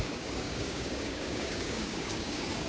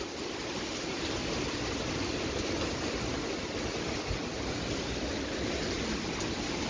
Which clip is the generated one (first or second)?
first